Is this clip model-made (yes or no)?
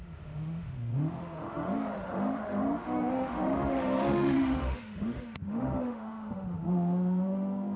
yes